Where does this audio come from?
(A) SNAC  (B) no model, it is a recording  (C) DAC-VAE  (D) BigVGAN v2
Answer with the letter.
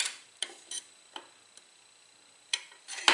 B